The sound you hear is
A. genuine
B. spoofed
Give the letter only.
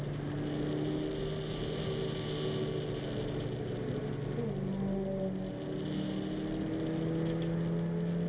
A